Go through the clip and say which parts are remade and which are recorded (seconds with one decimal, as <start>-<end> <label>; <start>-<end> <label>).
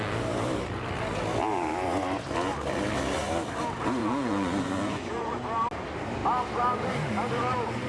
0.0-4.0 recorded; 4.0-5.4 remade; 5.4-7.9 recorded